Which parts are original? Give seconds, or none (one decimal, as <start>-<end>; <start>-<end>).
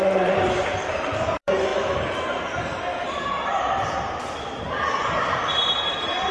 none